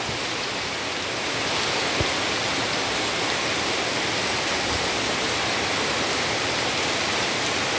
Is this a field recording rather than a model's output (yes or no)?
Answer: yes